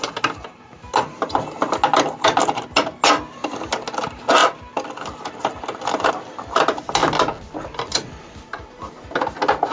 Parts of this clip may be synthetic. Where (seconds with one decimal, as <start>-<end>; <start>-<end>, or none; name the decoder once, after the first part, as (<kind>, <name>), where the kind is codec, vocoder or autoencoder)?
4.4-6.1 (vocoder, BigVGAN v2)